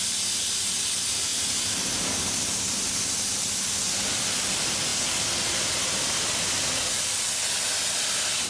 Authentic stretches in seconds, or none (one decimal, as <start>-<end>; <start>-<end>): 0.0-8.5

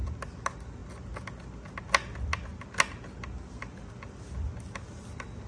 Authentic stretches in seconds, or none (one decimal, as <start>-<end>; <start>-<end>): 0.0-5.5

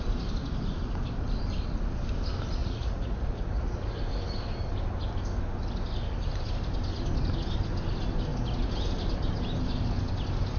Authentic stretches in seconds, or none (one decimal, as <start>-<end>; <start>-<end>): 0.0-2.6; 4.0-10.6

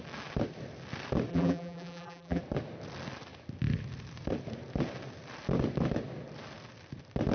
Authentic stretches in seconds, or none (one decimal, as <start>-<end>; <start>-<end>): 0.0-1.3; 2.4-7.3

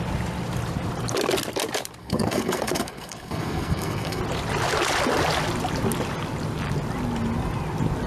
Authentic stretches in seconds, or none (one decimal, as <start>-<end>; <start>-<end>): 0.0-2.0; 4.2-8.1